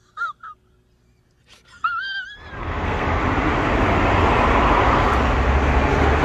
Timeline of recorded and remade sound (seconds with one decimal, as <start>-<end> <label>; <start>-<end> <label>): 0.0-2.6 recorded; 2.6-3.2 remade; 3.2-6.2 recorded